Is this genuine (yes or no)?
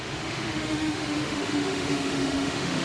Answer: no